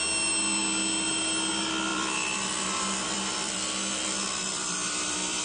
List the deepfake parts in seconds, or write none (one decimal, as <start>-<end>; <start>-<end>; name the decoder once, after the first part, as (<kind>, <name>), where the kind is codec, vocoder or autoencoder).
1.9-5.4 (vocoder, BigVGAN v2)